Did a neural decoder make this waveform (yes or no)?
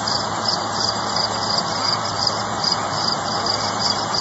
yes